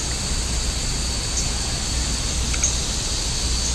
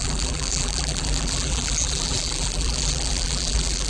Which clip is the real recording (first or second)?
first